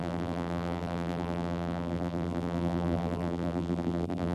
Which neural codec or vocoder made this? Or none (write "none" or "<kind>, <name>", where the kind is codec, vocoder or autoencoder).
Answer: vocoder, BigVGAN v2